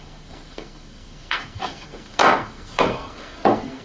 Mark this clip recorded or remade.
remade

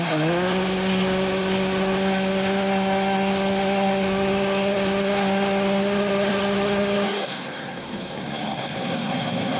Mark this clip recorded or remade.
remade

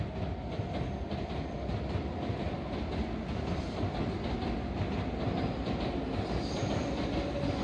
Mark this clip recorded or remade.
recorded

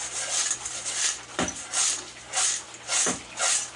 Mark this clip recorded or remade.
recorded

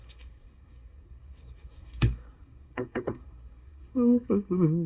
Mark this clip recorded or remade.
remade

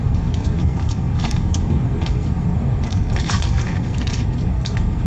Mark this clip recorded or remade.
remade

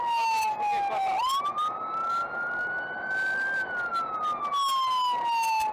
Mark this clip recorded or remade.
recorded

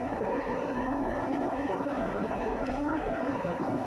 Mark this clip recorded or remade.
remade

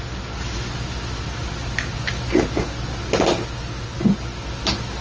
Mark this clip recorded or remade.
recorded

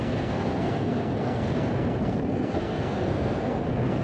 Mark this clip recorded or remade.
remade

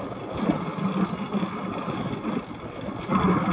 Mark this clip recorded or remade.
recorded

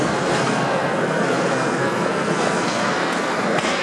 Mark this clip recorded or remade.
remade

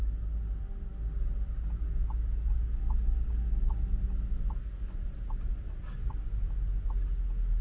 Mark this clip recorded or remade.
recorded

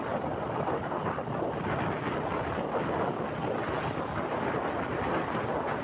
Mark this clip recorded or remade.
recorded